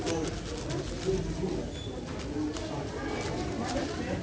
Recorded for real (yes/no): yes